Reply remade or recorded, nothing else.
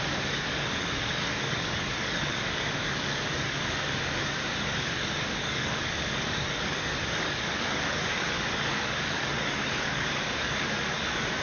remade